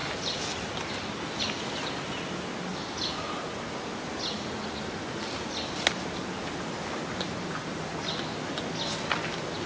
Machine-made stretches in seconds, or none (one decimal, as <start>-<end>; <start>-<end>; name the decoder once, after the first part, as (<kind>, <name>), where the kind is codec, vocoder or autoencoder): none